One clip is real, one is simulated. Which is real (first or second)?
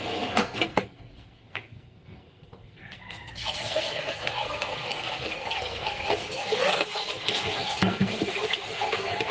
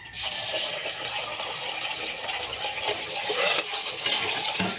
second